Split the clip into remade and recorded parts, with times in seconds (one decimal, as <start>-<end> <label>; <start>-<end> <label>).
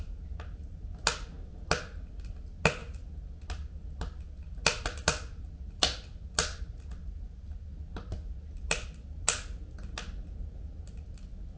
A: 0.0-11.6 recorded